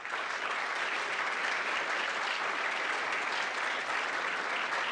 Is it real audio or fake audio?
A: real